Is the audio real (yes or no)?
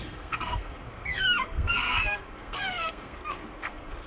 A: no